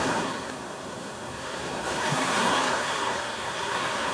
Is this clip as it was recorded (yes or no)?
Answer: no